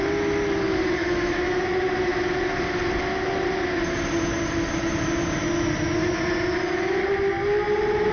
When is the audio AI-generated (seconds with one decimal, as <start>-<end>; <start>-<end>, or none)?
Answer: 1.0-1.7